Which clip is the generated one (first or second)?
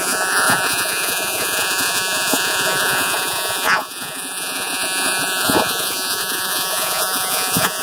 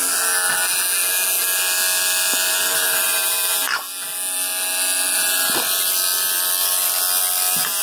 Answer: first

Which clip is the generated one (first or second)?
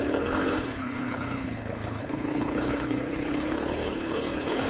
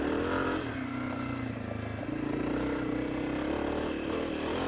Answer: first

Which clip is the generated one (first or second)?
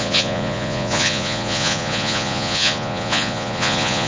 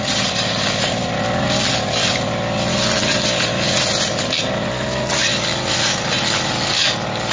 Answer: first